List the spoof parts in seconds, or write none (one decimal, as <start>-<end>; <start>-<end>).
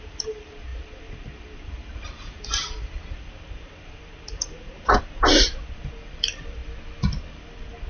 0.0-6.6; 7.3-7.9